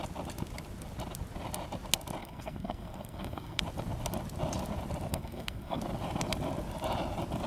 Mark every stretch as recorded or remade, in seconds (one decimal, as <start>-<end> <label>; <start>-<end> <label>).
0.0-2.2 recorded; 2.2-3.6 remade; 3.6-5.1 recorded; 5.1-5.8 remade; 5.8-7.5 recorded

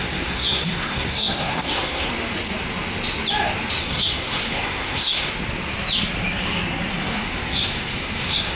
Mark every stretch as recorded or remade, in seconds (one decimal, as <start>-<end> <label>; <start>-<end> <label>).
0.0-2.1 remade; 2.1-3.8 recorded; 3.8-5.3 remade; 5.3-6.9 recorded; 6.9-8.6 remade

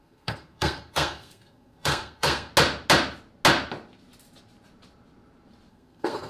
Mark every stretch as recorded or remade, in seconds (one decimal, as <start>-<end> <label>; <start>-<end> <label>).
0.0-2.5 remade; 2.5-5.7 recorded; 5.7-6.3 remade

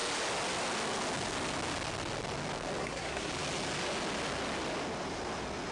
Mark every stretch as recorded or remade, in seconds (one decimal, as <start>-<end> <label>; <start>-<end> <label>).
0.0-2.8 recorded; 2.8-3.3 remade; 3.3-5.7 recorded

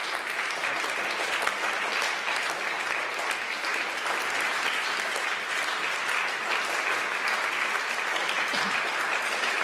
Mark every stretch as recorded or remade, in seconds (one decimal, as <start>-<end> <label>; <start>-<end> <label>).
0.0-9.6 recorded